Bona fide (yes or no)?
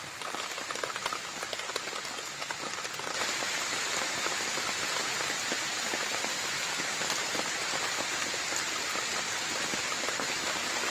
yes